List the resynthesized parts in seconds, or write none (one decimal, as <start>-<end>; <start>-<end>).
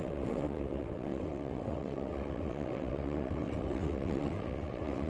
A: 0.0-5.1